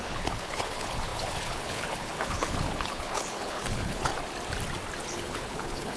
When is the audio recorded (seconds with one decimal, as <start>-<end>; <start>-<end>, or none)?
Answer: 4.1-5.1